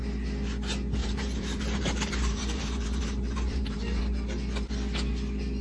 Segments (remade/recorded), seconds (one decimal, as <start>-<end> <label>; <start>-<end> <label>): 0.0-1.0 recorded; 1.0-4.0 remade; 4.0-5.6 recorded